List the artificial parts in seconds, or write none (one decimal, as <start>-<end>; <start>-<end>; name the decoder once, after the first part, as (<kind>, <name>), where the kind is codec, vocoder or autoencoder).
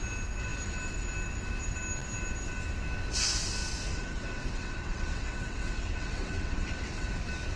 3.9-7.1 (vocoder, WaveNeXt)